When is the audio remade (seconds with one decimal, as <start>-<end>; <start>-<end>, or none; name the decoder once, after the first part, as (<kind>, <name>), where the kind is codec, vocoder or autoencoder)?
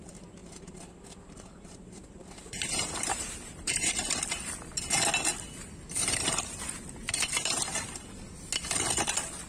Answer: 0.4-3.9 (vocoder, BigVGAN v2); 7.0-7.6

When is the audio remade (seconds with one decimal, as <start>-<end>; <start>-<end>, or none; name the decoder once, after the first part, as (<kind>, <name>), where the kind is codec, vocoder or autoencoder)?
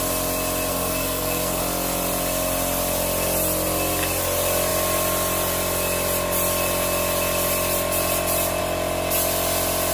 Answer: 0.7-1.6 (codec, SNAC)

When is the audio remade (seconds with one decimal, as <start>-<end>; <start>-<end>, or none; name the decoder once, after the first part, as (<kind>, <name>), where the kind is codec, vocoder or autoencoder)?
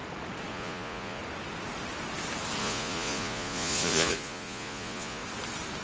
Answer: 0.5-1.2 (vocoder, Vocos); 2.6-5.2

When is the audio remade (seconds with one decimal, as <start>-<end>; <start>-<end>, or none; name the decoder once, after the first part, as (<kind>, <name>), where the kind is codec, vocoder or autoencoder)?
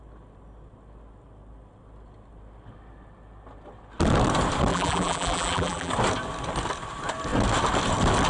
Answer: 4.7-5.9 (vocoder, BigVGAN v2)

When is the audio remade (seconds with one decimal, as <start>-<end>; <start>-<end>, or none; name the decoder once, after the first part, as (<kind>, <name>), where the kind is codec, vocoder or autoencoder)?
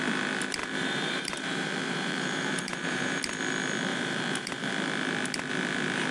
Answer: 0.6-3.2 (vocoder, BigVGAN v2); 3.9-4.7